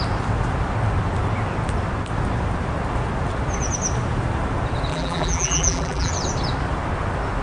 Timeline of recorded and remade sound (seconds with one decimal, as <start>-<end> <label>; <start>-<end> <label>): 0.0-4.9 recorded; 4.9-6.1 remade; 6.1-7.4 recorded